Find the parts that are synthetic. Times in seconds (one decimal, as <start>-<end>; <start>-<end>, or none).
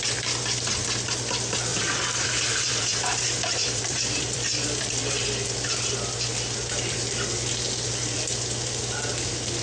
1.7-5.1